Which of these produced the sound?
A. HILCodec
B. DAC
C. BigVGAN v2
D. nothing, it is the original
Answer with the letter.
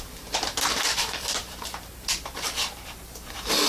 C